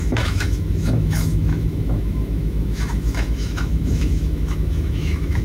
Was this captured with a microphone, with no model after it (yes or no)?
no